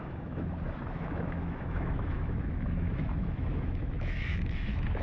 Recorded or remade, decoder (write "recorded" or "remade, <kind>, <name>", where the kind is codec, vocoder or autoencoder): remade, autoencoder, DAC-VAE